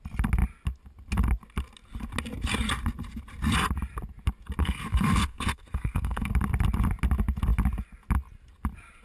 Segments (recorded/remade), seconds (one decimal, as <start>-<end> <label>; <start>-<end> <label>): 0.0-4.6 recorded; 4.6-6.3 remade; 6.3-9.0 recorded